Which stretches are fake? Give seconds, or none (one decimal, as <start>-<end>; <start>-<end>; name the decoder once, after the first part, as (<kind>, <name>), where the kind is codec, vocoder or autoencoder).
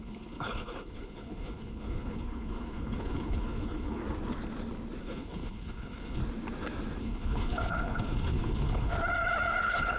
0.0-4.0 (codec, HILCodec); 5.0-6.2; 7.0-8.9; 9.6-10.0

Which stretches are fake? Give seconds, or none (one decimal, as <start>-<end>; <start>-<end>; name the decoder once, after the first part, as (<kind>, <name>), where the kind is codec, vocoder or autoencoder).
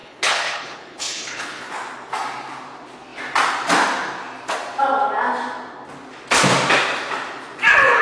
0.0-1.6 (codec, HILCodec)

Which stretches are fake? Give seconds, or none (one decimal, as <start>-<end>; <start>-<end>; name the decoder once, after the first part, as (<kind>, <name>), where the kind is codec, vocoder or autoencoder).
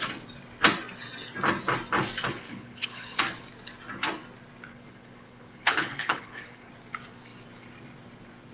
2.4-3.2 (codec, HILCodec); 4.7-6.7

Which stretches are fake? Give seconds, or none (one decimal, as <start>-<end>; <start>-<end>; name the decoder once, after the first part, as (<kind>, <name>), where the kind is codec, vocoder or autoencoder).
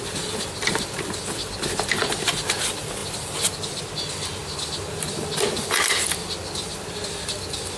none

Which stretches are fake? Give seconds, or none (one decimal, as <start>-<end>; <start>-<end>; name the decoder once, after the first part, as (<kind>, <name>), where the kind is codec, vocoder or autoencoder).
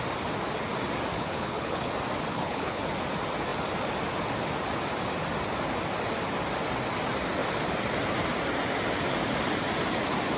1.1-1.9 (codec, HILCodec); 2.3-2.8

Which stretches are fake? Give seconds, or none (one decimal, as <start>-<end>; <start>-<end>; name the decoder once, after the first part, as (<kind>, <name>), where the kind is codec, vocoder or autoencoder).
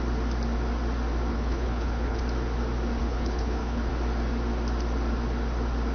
1.3-2.2 (codec, HILCodec); 3.0-3.9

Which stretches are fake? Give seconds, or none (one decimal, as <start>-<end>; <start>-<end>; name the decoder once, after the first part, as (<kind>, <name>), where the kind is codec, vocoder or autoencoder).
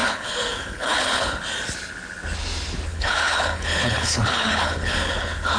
0.0-1.4 (codec, HILCodec); 2.9-5.6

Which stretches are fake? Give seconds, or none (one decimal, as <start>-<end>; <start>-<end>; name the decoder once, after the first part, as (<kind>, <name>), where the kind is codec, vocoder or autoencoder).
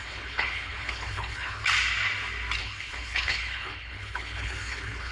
0.0-1.6 (codec, HILCodec); 2.6-5.1